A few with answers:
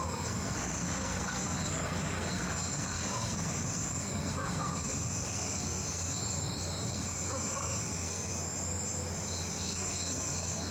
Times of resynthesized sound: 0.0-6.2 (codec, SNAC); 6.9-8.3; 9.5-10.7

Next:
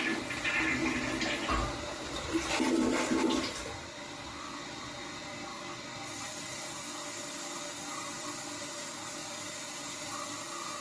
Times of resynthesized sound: none

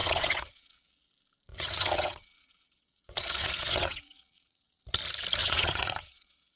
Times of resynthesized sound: 0.0-1.1 (vocoder, WaveNeXt); 1.5-4.8; 5.4-6.6

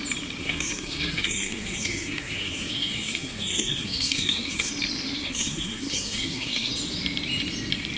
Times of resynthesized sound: 0.4-4.7 (codec, SNAC); 5.2-6.7